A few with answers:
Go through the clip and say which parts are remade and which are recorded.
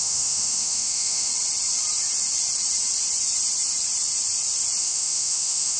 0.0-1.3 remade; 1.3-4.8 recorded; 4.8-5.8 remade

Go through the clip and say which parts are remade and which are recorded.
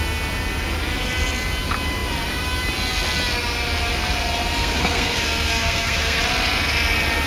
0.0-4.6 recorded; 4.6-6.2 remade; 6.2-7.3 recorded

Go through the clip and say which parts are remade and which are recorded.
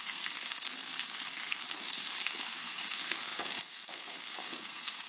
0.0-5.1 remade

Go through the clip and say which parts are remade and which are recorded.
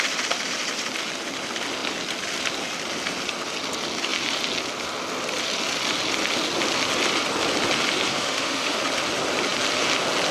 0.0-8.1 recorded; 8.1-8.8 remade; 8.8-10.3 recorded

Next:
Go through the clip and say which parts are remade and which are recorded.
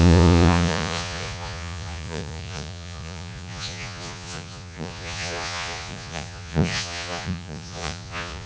0.0-8.5 remade